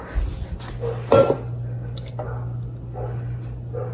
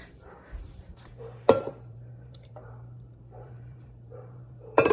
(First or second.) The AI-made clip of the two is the second